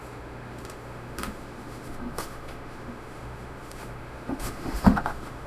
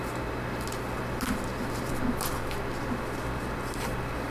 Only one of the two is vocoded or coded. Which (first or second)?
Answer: first